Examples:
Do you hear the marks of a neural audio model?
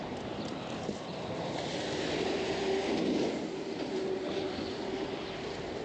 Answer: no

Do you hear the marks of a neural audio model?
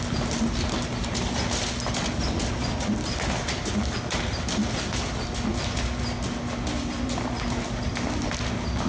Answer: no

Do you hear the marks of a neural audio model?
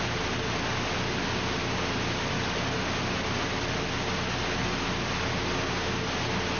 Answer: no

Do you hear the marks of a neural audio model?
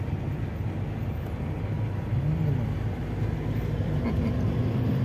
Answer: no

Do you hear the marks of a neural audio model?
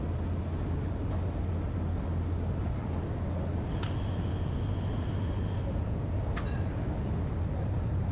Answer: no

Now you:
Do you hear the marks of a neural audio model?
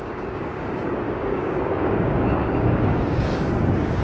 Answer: yes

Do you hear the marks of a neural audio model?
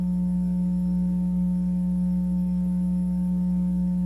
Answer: yes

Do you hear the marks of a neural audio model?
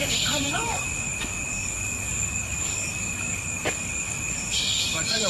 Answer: yes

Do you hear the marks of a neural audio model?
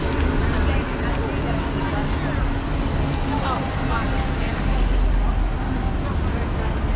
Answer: no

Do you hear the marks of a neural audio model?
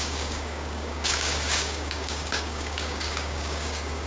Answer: yes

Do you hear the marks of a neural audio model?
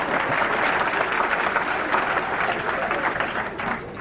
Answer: no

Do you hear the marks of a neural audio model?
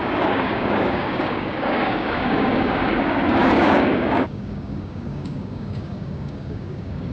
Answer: yes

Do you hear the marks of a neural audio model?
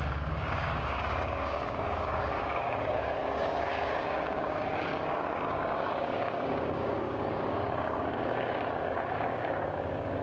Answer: yes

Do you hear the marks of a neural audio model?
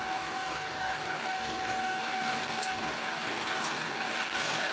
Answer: yes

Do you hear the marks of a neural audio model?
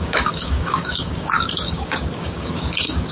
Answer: yes